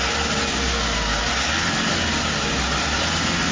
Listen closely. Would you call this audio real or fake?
real